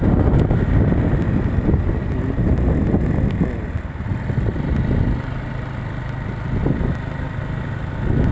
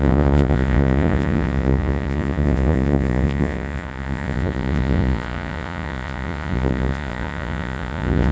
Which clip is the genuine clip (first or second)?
first